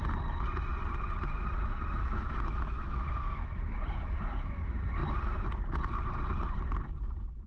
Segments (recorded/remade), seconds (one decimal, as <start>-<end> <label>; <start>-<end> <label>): 0.0-2.0 recorded; 2.0-3.6 remade; 3.6-7.5 recorded

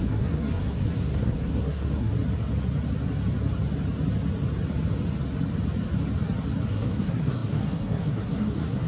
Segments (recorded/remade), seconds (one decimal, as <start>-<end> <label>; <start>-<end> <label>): 0.0-2.1 remade; 2.1-6.7 recorded; 6.7-8.9 remade

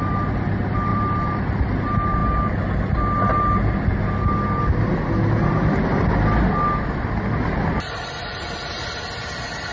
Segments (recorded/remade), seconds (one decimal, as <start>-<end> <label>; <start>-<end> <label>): 0.0-0.9 recorded; 0.9-1.4 remade; 1.4-9.7 recorded

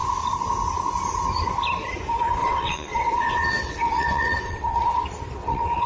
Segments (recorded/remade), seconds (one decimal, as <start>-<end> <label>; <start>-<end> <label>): 0.0-2.4 recorded; 2.4-5.0 remade; 5.0-5.4 recorded; 5.4-5.9 remade

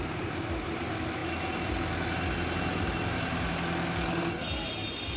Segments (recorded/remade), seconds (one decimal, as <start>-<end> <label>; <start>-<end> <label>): 0.0-5.2 recorded

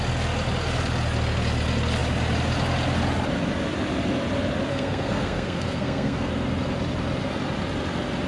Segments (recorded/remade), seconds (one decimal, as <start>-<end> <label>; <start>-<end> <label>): 0.0-4.7 recorded; 4.7-6.3 remade; 6.3-8.3 recorded

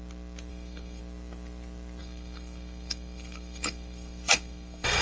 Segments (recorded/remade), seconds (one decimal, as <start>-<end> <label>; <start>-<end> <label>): 0.0-0.5 recorded; 0.5-1.0 remade; 1.0-2.0 recorded; 2.0-5.0 remade

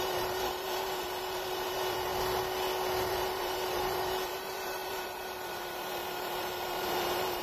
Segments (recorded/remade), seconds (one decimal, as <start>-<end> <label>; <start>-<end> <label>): 0.0-2.1 remade; 2.1-3.1 recorded; 3.1-7.4 remade